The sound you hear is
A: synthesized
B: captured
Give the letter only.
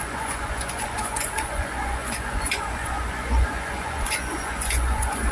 A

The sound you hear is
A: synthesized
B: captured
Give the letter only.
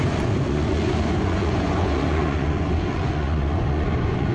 A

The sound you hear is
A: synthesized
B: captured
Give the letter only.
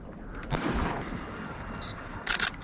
B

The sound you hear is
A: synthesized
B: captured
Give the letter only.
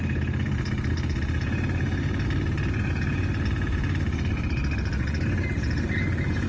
A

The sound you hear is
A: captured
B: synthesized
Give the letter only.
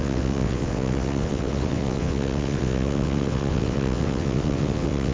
B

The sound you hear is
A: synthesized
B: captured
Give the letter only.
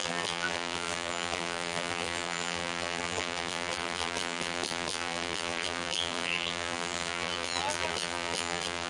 A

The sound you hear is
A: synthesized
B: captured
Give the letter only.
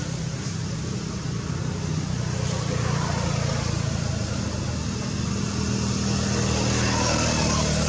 B